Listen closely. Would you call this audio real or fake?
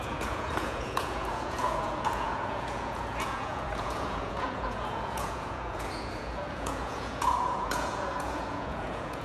fake